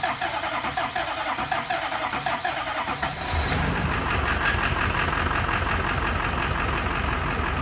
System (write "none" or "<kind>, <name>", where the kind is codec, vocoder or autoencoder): none